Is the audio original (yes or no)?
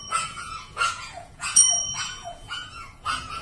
no